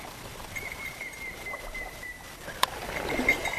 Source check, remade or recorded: remade